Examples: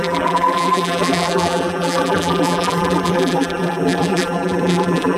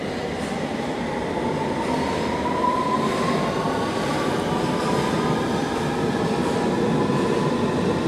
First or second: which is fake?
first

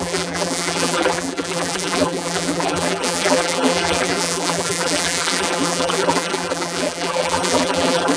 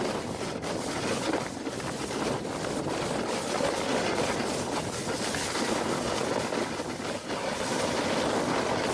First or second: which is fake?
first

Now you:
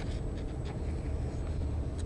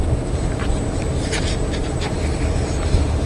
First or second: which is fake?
second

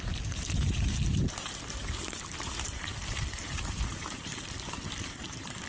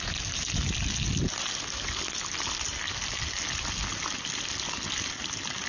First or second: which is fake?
first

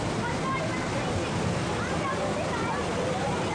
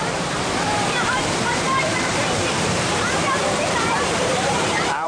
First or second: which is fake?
second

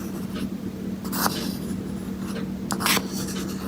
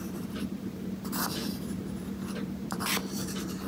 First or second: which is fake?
second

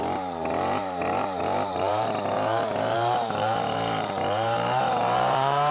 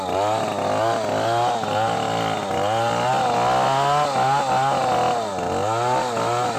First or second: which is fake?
first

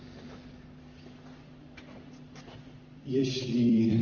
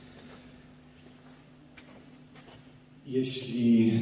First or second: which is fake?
first